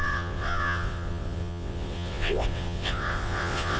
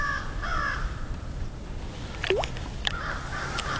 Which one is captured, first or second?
second